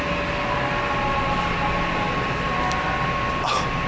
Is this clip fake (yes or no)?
no